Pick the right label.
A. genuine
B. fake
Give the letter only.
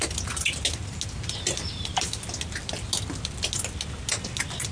A